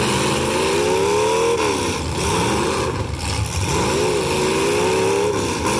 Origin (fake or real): real